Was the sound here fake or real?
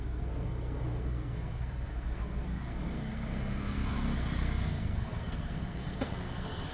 fake